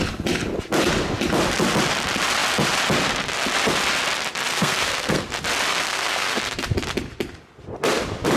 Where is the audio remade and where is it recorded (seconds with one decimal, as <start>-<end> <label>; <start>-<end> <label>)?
0.0-4.5 recorded; 4.5-5.2 remade; 5.2-5.7 recorded; 5.7-6.4 remade; 6.4-8.4 recorded